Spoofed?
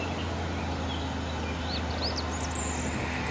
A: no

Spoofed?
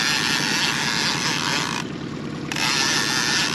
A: no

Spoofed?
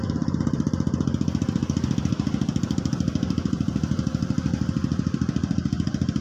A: no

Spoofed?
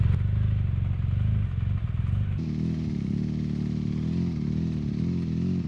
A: no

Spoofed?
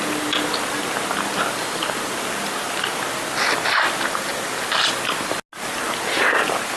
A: no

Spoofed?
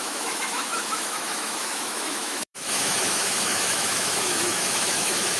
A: yes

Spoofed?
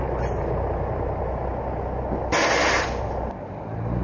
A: no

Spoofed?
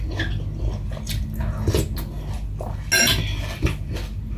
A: no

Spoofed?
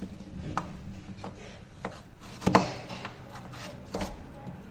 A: no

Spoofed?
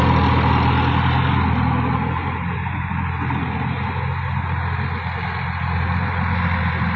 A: no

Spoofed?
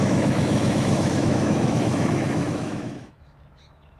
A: yes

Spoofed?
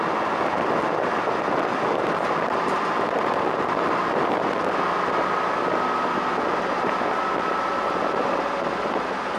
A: no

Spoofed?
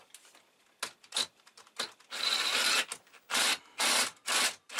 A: no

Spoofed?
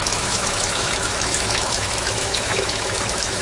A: yes